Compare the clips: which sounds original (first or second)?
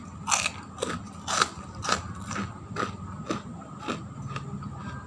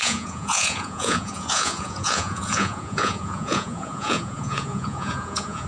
first